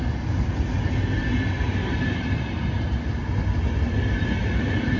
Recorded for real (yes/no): yes